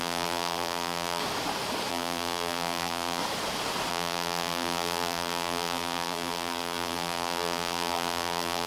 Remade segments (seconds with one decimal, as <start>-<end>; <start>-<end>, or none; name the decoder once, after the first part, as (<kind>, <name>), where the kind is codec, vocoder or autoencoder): 0.0-1.2 (vocoder, BigVGAN v2); 1.9-3.2; 3.9-8.7